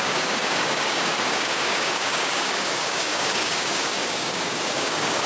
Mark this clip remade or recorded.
remade